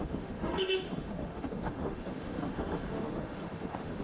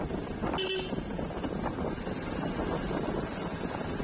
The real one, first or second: second